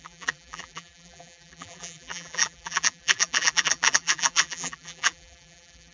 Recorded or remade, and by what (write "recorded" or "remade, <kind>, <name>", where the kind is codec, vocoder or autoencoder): remade, vocoder, BigVGAN v2